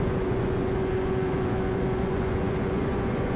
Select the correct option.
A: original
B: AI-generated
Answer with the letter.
B